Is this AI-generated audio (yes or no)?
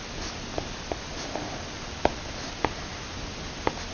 no